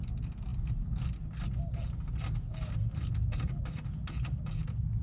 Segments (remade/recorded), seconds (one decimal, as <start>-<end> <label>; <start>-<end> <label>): 0.0-5.0 recorded